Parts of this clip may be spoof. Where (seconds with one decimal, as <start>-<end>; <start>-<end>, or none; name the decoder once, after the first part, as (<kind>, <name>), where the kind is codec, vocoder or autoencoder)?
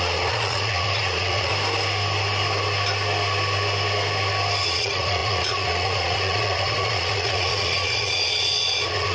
0.0-1.5 (vocoder, Vocos); 4.6-9.1